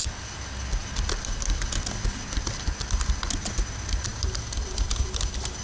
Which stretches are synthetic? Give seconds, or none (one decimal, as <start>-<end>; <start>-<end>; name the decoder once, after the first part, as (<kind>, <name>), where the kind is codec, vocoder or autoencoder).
none